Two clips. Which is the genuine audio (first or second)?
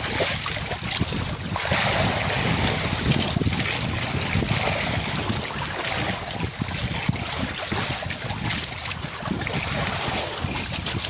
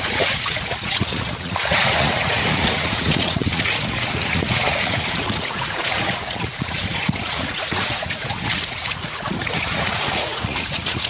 first